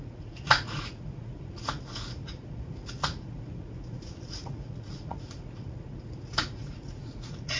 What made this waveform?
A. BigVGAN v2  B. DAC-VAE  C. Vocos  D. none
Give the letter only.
C